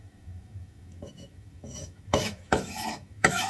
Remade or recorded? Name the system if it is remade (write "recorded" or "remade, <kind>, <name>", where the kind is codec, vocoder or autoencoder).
remade, autoencoder, DAC-VAE